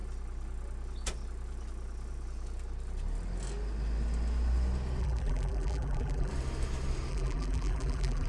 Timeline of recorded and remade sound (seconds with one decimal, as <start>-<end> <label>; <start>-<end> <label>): 0.0-5.0 recorded; 5.0-6.3 remade; 6.3-7.1 recorded; 7.1-8.3 remade